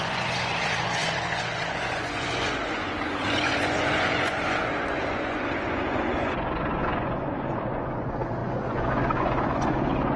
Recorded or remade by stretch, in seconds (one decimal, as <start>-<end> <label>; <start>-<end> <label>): 0.0-10.2 remade